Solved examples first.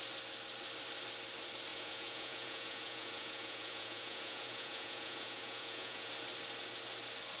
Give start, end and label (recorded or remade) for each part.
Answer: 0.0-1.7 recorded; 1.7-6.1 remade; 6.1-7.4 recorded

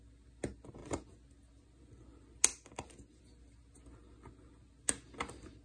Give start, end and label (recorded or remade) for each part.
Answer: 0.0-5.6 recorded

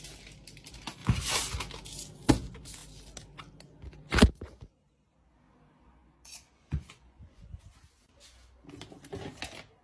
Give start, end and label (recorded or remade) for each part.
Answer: 0.0-6.0 recorded; 6.0-7.6 remade; 7.6-9.8 recorded